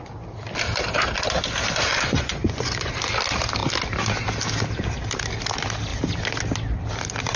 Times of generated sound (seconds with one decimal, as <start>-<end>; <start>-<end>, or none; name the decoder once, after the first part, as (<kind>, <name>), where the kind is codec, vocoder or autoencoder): 1.9-2.9 (vocoder, Vocos)